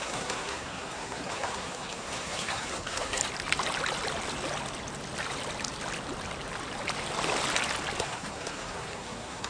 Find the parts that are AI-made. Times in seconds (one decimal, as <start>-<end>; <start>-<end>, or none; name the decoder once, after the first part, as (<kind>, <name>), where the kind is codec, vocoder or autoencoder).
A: 0.0-3.2 (codec, SNAC); 8.0-9.5